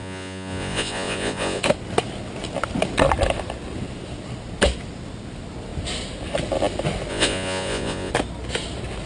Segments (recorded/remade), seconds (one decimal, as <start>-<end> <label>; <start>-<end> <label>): 0.0-1.6 remade; 1.6-7.1 recorded; 7.1-8.1 remade; 8.1-9.1 recorded